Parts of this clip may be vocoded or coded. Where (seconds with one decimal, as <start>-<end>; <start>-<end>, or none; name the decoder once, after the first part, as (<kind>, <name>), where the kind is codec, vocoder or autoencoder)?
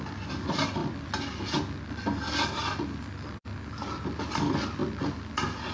none